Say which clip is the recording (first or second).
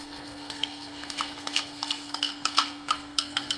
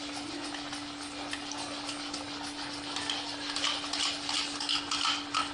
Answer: second